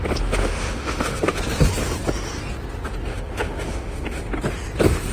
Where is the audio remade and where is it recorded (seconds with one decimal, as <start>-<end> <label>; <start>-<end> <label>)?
0.0-0.4 recorded; 0.4-1.4 remade; 1.4-3.1 recorded; 3.1-4.2 remade; 4.2-5.1 recorded